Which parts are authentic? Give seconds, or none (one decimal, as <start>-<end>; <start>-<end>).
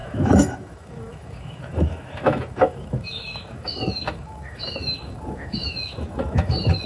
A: none